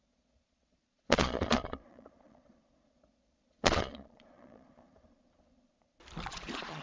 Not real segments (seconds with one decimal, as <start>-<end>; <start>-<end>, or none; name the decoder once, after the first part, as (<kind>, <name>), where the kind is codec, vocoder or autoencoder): 0.0-5.7 (vocoder, Vocos); 6.3-6.8